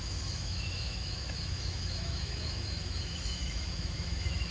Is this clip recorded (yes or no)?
no